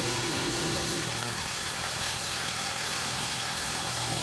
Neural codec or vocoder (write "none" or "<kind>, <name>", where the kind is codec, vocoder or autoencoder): codec, SNAC